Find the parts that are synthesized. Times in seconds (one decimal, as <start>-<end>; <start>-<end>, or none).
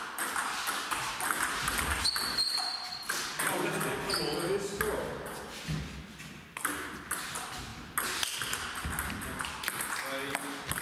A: none